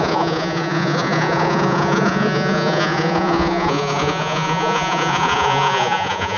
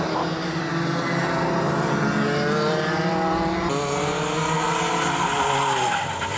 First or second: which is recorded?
second